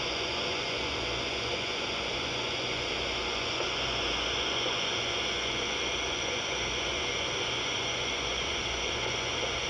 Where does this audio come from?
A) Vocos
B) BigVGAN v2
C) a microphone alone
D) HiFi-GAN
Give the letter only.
A